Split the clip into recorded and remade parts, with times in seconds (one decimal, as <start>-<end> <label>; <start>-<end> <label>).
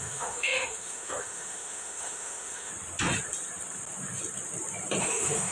0.0-2.7 remade; 2.7-5.0 recorded; 5.0-5.5 remade